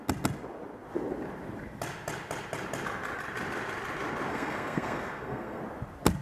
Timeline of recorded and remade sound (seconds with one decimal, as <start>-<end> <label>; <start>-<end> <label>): 0.0-4.3 recorded; 4.3-5.6 remade; 5.6-6.2 recorded